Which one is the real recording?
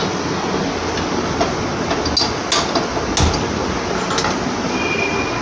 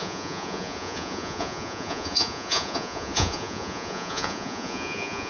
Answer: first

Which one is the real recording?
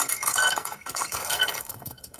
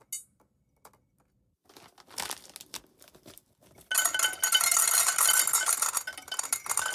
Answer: second